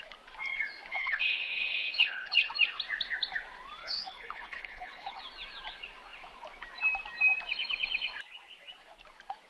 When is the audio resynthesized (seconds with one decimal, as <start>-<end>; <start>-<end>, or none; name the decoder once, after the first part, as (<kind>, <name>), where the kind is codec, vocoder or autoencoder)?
0.9-2.5 (codec, HILCodec); 3.8-5.2